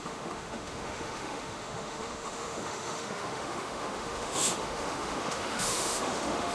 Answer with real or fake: fake